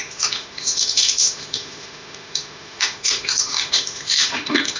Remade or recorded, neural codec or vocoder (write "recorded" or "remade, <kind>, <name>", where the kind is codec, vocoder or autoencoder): remade, autoencoder, DAC-VAE